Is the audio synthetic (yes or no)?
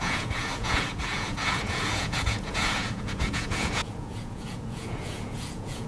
yes